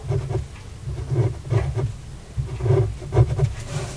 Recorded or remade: recorded